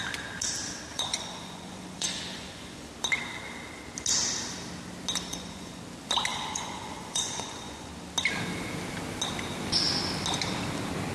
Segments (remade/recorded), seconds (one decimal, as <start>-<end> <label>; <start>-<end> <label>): 0.0-0.9 recorded; 0.9-2.9 remade; 2.9-5.3 recorded; 5.3-5.8 remade; 5.8-6.3 recorded; 6.3-7.9 remade; 7.9-11.1 recorded